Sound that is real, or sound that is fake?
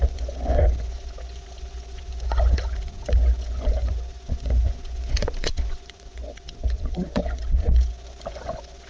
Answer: fake